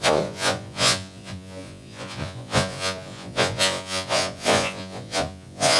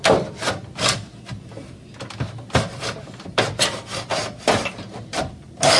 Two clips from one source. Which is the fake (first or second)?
first